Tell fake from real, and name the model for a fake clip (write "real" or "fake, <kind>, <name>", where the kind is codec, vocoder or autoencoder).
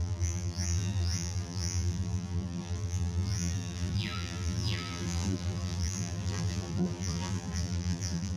fake, vocoder, BigVGAN v2